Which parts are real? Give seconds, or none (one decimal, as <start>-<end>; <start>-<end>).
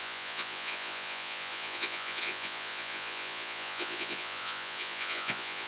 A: none